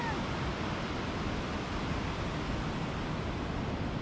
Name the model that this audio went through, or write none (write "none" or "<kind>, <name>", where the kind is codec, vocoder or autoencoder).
none